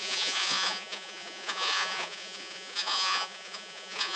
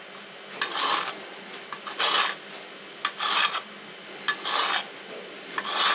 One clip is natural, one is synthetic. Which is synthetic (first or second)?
first